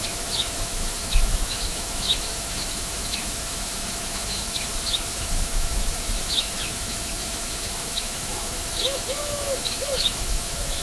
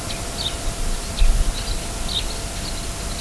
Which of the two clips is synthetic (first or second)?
first